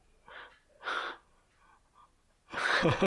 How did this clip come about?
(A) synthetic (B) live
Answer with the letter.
B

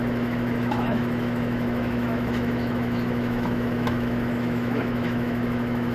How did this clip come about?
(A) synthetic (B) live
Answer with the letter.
A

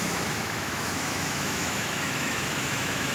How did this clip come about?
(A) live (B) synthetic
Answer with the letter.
B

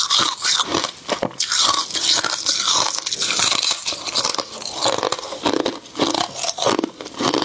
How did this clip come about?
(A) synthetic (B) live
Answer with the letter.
B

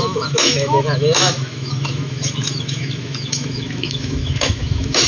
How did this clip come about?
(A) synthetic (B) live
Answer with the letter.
A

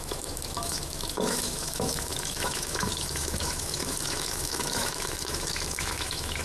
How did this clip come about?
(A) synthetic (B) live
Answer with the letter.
A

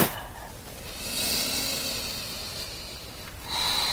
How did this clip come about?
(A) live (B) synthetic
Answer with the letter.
A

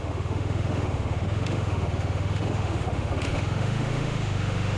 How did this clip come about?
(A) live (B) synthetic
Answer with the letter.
B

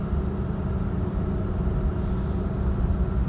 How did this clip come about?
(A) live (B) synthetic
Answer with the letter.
A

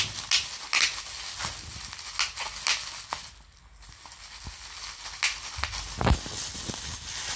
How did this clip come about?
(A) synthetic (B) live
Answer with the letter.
B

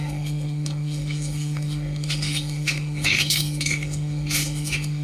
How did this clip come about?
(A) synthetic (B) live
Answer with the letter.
A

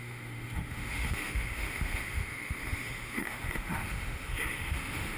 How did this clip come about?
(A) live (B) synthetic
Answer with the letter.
B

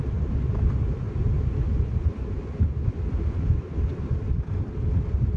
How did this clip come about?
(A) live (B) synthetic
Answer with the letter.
A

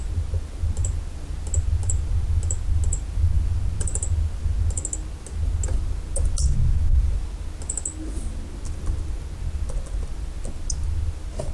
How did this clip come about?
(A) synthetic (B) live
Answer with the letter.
B